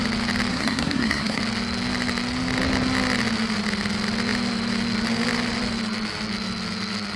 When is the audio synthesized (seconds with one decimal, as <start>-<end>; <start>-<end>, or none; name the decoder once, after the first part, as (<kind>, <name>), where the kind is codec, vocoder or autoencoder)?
0.5-1.4 (codec, SNAC)